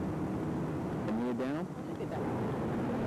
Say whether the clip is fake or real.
real